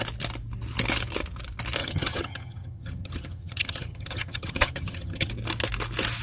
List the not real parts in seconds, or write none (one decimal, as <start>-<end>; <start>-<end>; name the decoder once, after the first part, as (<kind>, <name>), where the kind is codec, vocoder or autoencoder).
1.8-5.3 (vocoder, HiFi-GAN)